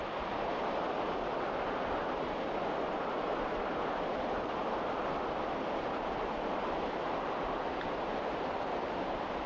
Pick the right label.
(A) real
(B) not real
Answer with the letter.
A